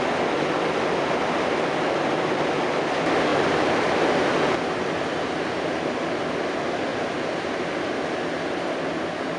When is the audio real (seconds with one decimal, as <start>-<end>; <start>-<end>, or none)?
0.0-3.3; 5.0-6.9; 8.0-9.4